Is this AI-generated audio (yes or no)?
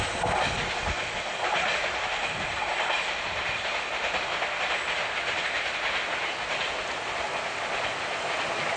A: no